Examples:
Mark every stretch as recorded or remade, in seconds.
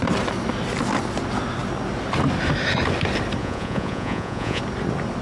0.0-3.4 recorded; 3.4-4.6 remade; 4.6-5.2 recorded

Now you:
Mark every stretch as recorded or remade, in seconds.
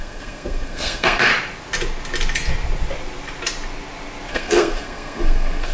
0.0-1.3 remade; 1.3-4.3 recorded; 4.3-5.7 remade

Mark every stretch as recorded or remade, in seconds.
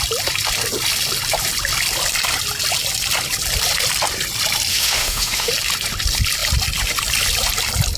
0.0-4.7 recorded; 4.7-5.5 remade; 5.5-8.0 recorded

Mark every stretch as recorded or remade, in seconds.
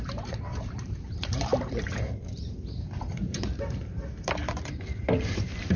0.0-5.8 remade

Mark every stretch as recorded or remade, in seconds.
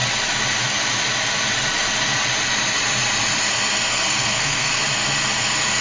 0.0-3.9 recorded; 3.9-4.7 remade; 4.7-5.8 recorded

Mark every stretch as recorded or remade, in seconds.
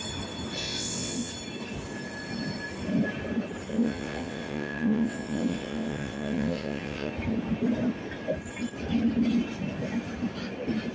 0.0-0.6 recorded; 0.6-1.3 remade; 1.3-3.7 recorded; 3.7-7.1 remade; 7.1-10.9 recorded